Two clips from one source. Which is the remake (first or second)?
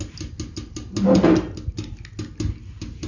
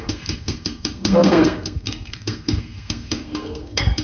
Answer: second